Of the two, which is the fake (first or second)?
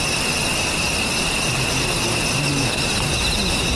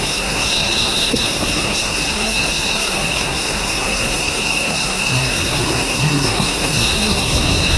second